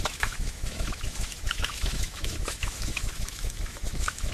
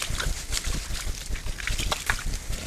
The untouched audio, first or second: second